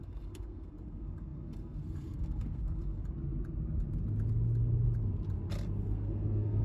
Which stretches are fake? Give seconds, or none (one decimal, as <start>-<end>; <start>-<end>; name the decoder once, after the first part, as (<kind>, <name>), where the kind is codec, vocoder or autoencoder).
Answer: 0.0-3.0 (codec, SNAC); 5.8-6.6